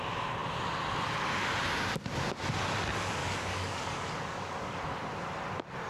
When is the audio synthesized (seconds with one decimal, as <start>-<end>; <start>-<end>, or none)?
3.2-4.8